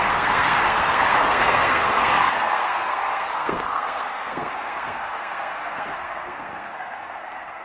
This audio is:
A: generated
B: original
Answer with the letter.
A